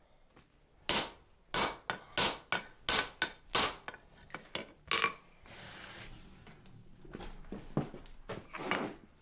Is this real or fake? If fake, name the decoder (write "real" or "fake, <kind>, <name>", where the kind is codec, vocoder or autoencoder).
real